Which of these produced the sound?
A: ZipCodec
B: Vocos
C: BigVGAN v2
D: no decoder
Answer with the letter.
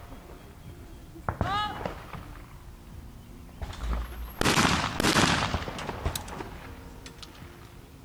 D